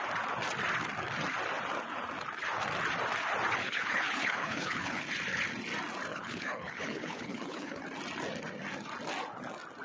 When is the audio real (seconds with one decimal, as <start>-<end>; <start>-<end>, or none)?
0.0-3.6; 5.0-6.1; 7.8-9.8